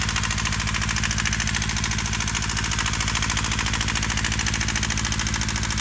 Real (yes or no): yes